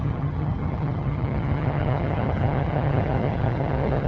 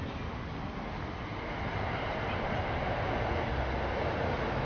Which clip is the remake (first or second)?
first